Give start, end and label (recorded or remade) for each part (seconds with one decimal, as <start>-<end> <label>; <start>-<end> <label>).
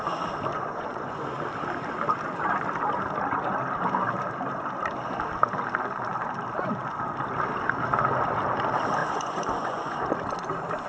0.0-0.5 recorded; 0.5-1.2 remade; 1.2-9.0 recorded; 9.0-10.1 remade; 10.1-10.9 recorded